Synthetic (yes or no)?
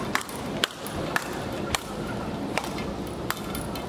no